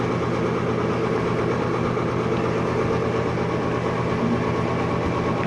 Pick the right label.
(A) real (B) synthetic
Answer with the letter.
A